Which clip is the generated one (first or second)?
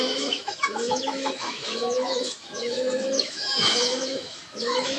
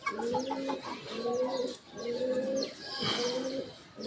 first